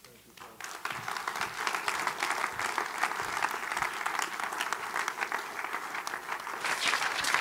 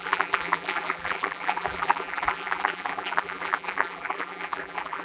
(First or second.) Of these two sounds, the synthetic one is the second